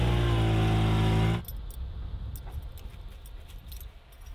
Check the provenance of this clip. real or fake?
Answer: real